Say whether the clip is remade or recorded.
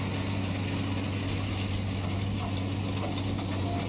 recorded